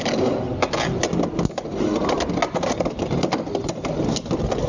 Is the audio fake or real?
real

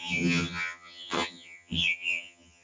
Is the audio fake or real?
fake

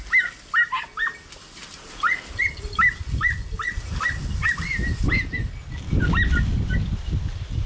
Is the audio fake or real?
real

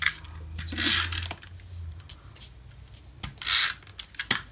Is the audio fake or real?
real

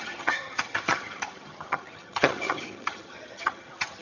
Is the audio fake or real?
fake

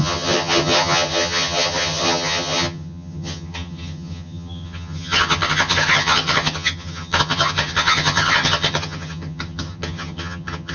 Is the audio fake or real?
fake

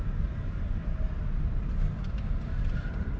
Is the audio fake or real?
real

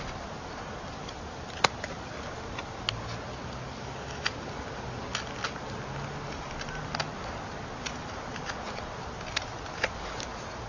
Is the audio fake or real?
real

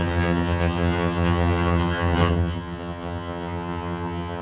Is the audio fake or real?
fake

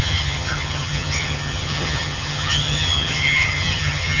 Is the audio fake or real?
fake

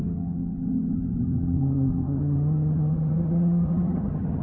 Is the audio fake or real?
fake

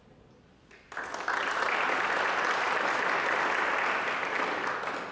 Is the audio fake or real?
real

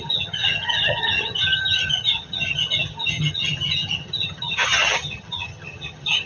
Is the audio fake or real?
fake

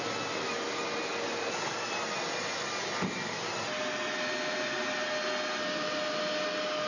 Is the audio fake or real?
real